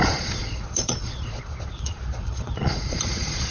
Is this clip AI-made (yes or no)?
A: yes